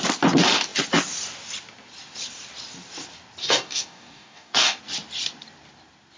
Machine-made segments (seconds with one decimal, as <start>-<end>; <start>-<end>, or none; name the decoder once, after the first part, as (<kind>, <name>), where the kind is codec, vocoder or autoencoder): 3.4-4.8 (codec, DAC)